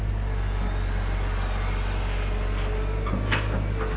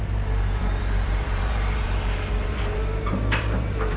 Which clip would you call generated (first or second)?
second